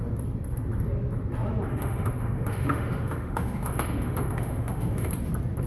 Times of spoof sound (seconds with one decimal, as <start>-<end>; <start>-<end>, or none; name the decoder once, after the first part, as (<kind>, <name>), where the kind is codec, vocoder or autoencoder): 1.7-5.1 (autoencoder, DAC-VAE)